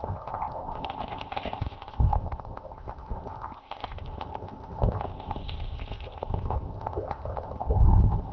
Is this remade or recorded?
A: remade